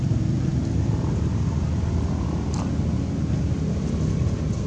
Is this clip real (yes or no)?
yes